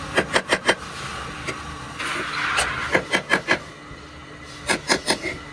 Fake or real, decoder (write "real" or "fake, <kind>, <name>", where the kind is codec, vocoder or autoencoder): real